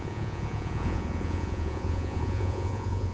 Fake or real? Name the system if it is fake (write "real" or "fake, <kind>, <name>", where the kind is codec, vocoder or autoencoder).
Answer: fake, vocoder, Vocos